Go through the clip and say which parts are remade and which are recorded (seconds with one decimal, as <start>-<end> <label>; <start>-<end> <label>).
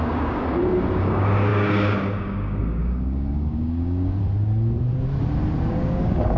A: 0.0-4.2 remade; 4.2-5.7 recorded; 5.7-6.4 remade